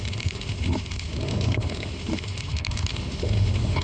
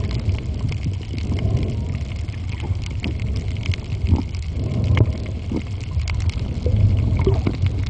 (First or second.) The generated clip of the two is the first